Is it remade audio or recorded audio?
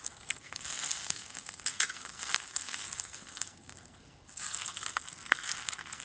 remade